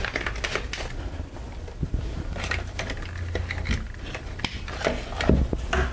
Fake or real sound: real